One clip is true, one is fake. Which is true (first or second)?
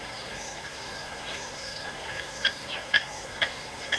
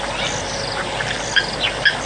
second